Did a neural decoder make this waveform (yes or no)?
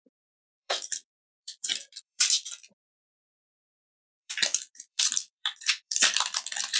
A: yes